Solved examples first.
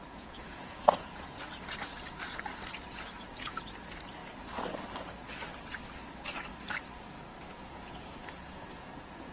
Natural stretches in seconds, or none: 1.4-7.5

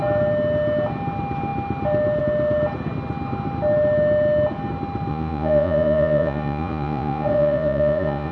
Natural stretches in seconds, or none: 0.0-5.1

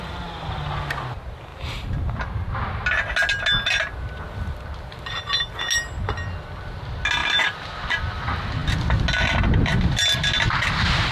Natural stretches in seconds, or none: 0.0-7.2; 8.0-11.1

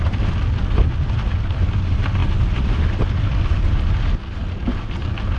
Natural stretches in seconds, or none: 0.0-5.4

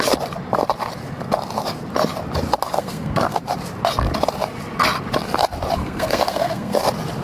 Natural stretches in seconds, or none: 0.0-2.8; 3.4-5.8; 6.8-7.2

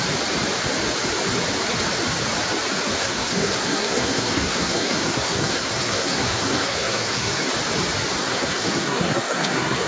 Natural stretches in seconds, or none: 0.0-3.0; 7.5-8.2

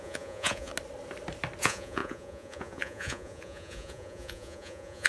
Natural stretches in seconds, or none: 0.7-1.6

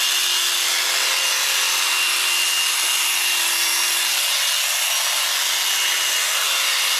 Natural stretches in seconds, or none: 0.0-7.0